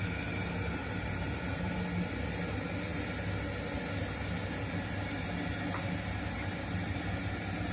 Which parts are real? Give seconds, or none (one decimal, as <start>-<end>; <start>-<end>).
0.0-0.8; 1.7-7.7